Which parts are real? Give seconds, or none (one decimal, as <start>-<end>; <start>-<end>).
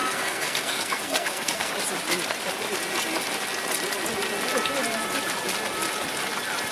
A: 1.7-6.7